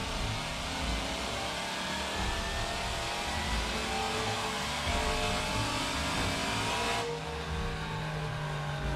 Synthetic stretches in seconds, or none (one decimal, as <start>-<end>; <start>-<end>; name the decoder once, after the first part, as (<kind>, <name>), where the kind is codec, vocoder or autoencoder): 4.2-4.9 (codec, SNAC)